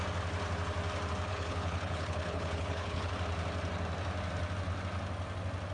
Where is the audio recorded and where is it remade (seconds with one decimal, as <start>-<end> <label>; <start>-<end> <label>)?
0.0-1.3 recorded; 1.3-3.1 remade; 3.1-5.7 recorded